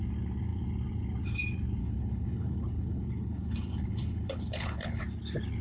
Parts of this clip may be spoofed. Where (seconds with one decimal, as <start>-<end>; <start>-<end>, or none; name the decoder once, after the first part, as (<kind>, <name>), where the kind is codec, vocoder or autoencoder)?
1.8-5.0 (codec, HILCodec)